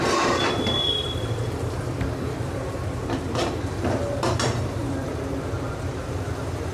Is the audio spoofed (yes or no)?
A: yes